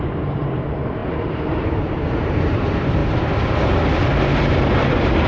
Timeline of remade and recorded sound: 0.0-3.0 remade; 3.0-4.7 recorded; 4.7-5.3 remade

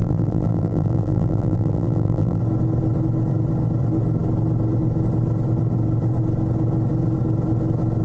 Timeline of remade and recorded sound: 0.0-2.4 remade; 2.4-8.0 recorded